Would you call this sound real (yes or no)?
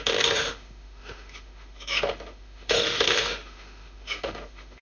no